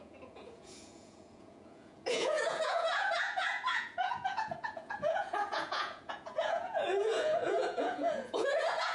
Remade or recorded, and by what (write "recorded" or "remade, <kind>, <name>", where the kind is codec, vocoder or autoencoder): remade, vocoder, Vocos